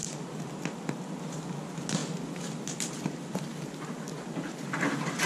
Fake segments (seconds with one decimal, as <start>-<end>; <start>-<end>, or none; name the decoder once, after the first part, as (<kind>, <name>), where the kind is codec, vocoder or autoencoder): 0.0-1.2 (vocoder, BigVGAN v2); 2.0-4.8